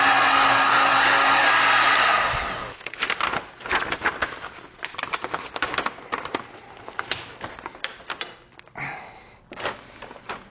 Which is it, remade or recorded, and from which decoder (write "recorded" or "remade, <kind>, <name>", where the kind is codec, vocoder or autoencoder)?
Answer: recorded